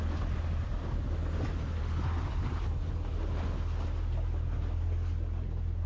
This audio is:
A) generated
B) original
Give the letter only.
B